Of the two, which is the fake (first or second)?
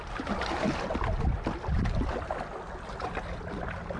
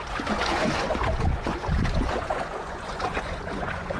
second